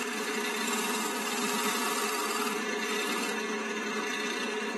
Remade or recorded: recorded